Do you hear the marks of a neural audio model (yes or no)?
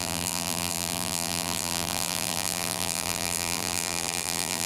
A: yes